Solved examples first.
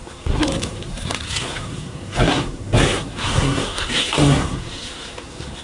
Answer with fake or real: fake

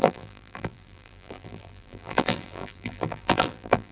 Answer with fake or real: fake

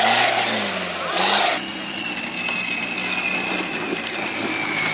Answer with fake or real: real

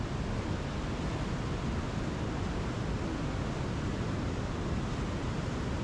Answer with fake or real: real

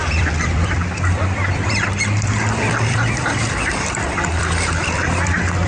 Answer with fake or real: fake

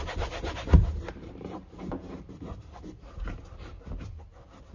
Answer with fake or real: real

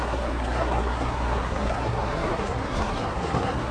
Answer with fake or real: fake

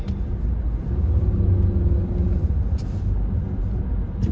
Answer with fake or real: real